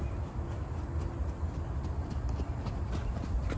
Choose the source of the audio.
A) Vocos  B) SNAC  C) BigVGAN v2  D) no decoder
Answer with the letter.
D